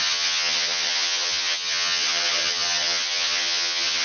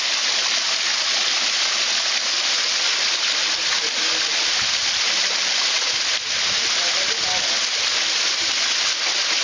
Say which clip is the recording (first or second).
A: second